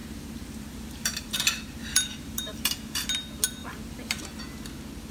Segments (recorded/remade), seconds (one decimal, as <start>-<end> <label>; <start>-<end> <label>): 0.0-3.1 remade; 3.1-3.6 recorded; 3.6-4.4 remade; 4.4-5.1 recorded